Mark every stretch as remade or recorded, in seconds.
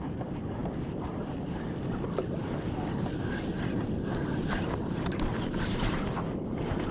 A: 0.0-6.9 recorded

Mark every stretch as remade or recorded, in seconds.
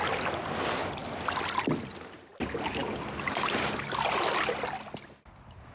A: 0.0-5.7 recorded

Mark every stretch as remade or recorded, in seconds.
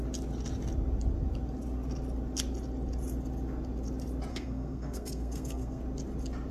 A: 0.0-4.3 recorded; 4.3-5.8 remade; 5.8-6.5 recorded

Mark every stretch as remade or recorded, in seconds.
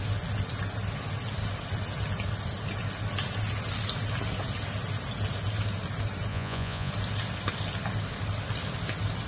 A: 0.0-6.3 recorded; 6.3-6.9 remade; 6.9-9.3 recorded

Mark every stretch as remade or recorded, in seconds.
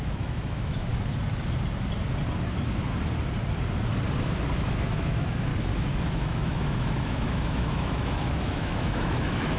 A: 0.0-0.9 remade; 0.9-4.7 recorded; 4.7-5.5 remade; 5.5-6.1 recorded; 6.1-9.6 remade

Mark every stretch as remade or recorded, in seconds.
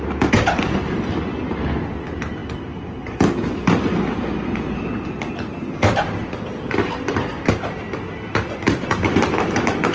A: 0.0-9.9 recorded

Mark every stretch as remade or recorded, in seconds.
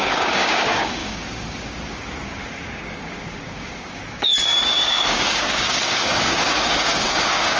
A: 0.0-7.6 remade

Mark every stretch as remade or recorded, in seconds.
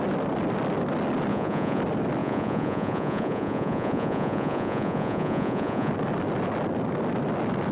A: 0.0-1.3 recorded; 1.3-1.8 remade; 1.8-2.2 recorded; 2.2-5.9 remade; 5.9-7.7 recorded